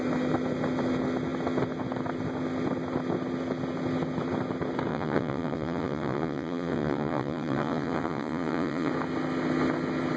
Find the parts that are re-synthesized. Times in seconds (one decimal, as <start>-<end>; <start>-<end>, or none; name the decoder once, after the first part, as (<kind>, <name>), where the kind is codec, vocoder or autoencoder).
4.9-8.9 (vocoder, WaveNeXt)